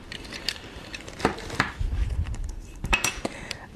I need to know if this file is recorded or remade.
remade